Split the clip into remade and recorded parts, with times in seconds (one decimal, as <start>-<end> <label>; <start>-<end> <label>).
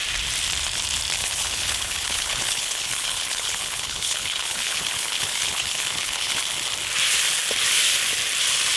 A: 0.0-1.2 recorded; 1.2-6.4 remade; 6.4-8.8 recorded